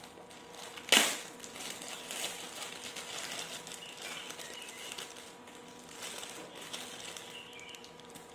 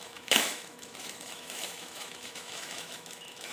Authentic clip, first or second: first